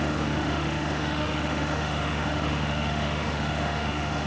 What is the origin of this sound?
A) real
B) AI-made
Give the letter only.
B